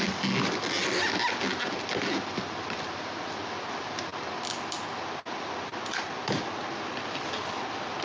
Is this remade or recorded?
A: recorded